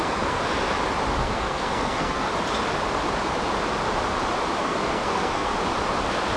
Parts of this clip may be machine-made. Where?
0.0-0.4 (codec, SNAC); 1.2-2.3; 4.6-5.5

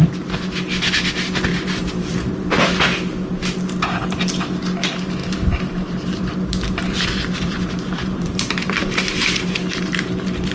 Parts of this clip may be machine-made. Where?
1.5-3.3 (vocoder, BigVGAN v2); 5.2-10.5

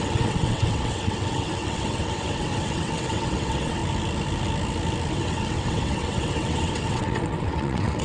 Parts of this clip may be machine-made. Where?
0.0-3.8 (vocoder, WaveNeXt); 5.1-8.0

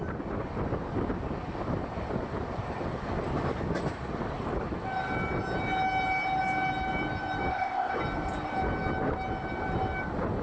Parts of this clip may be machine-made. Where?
7.5-8.0 (codec, ZipCodec)

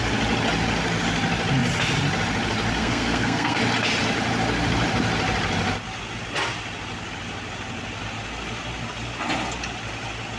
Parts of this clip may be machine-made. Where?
2.8-3.6 (codec, SNAC)

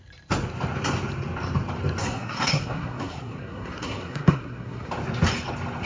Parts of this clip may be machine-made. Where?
2.0-4.9 (codec, SNAC)